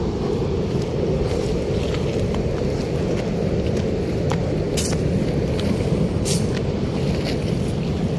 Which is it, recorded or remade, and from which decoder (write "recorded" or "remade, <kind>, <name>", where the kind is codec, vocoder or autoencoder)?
recorded